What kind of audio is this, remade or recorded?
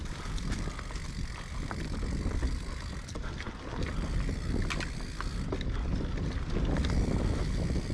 recorded